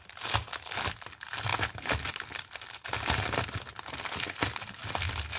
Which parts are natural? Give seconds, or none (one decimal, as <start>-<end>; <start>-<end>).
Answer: 0.0-5.4